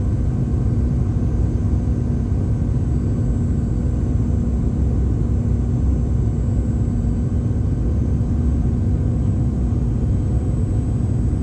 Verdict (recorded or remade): recorded